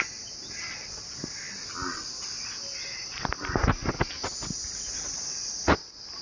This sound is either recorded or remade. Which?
recorded